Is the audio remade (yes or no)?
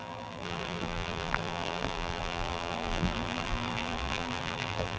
yes